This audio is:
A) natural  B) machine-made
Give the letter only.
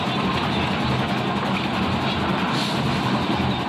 A